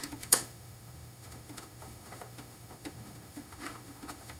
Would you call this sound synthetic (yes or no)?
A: yes